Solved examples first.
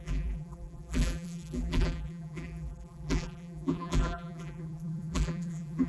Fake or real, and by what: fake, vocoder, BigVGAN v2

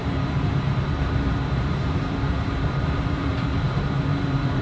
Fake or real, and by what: fake, vocoder, BigVGAN v2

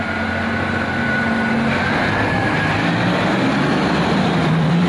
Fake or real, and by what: fake, vocoder, BigVGAN v2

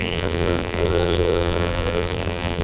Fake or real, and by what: fake, vocoder, BigVGAN v2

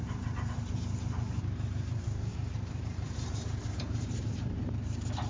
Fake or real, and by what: fake, vocoder, BigVGAN v2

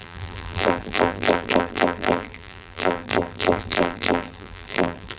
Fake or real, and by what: fake, vocoder, BigVGAN v2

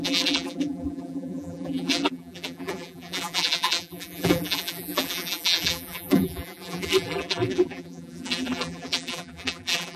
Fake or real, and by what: fake, vocoder, BigVGAN v2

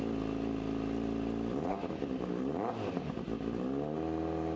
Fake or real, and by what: real